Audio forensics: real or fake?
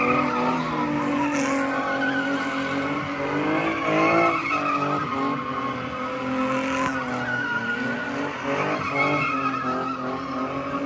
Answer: real